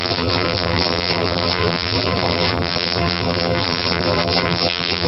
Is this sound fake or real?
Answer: fake